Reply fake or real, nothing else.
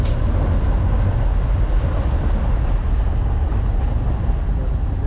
real